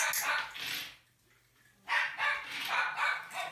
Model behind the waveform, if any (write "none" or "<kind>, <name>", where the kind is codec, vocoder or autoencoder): none